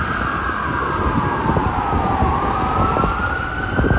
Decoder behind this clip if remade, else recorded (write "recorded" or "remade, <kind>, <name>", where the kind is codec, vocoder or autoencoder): recorded